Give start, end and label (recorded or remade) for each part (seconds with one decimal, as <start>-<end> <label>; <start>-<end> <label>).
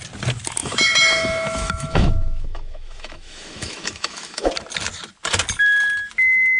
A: 0.0-0.6 recorded; 0.6-4.5 remade; 4.5-6.6 recorded